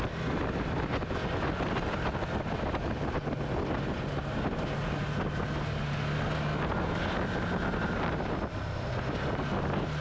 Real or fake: real